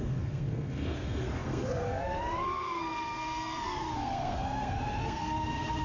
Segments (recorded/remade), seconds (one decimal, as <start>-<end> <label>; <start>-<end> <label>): 0.0-5.8 remade